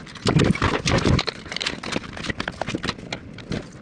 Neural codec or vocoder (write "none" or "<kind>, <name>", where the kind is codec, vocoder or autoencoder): none